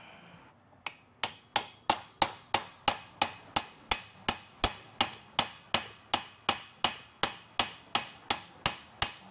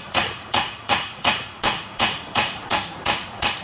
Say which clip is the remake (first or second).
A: second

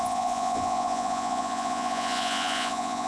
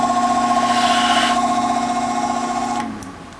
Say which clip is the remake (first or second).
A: first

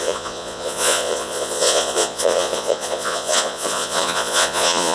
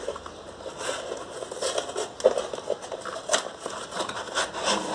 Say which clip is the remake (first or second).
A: first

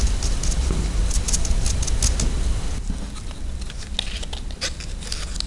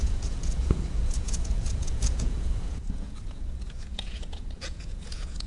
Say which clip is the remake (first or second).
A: second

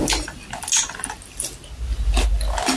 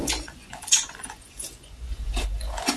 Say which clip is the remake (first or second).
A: second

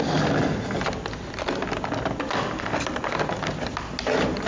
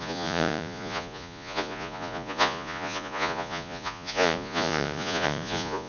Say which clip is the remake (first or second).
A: second